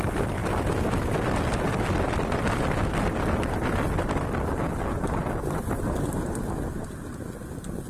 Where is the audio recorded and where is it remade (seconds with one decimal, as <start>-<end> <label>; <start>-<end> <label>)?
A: 0.0-7.9 recorded

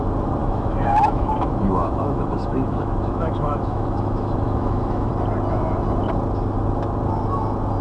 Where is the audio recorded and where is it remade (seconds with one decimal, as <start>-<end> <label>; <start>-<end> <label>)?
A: 0.0-0.4 recorded; 0.4-5.1 remade; 5.1-7.8 recorded

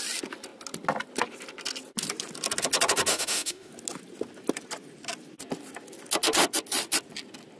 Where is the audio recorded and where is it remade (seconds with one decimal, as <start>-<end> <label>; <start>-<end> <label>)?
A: 0.0-3.1 recorded; 3.1-3.7 remade; 3.7-7.6 recorded

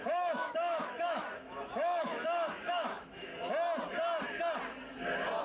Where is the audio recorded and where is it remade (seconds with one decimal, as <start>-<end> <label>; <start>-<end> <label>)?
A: 0.0-3.3 remade; 3.3-5.4 recorded

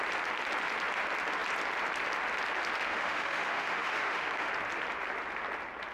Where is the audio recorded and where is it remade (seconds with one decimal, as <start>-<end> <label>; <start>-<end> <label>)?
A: 0.0-2.9 recorded; 2.9-4.5 remade; 4.5-5.9 recorded